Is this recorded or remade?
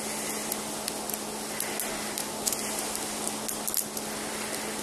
recorded